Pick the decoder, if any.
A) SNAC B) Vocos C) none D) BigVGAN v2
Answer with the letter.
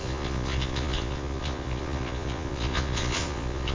B